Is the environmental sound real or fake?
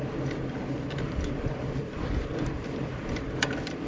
fake